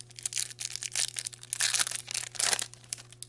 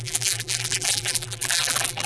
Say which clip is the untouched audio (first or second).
first